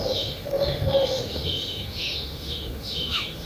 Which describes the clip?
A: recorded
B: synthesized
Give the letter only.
B